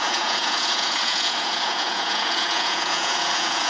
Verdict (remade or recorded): remade